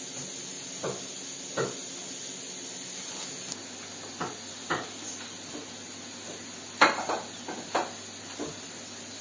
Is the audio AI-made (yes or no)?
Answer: no